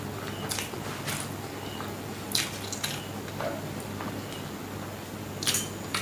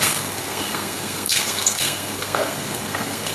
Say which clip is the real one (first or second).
first